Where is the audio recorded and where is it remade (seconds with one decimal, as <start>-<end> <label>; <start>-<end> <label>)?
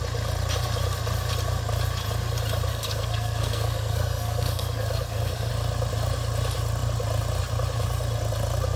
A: 0.0-2.7 recorded; 2.7-5.5 remade; 5.5-8.8 recorded